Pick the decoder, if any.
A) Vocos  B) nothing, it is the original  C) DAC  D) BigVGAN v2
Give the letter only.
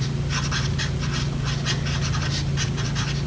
B